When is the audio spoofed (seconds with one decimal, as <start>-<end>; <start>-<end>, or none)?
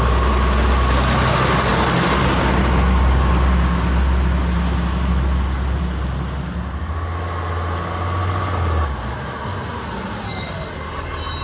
none